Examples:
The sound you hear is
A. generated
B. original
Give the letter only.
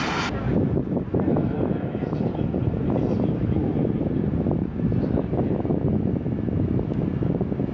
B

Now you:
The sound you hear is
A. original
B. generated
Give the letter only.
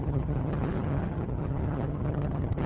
B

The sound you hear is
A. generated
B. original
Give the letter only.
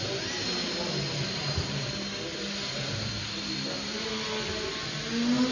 B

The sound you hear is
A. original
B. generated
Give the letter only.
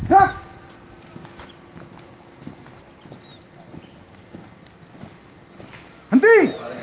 A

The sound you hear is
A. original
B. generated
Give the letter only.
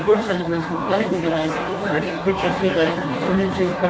B